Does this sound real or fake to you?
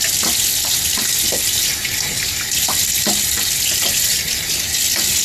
real